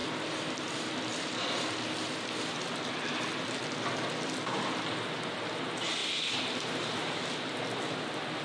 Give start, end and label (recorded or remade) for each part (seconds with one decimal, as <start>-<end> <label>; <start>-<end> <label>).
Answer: 0.0-6.0 recorded; 6.0-7.9 remade; 7.9-8.4 recorded